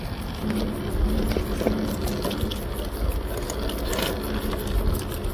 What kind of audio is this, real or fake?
real